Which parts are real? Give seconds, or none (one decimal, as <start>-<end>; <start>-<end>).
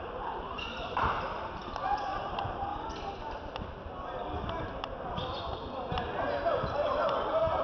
2.7-7.6